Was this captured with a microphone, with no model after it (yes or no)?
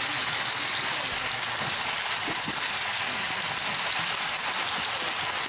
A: yes